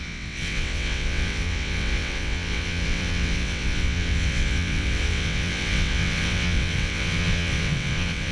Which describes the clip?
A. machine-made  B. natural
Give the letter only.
A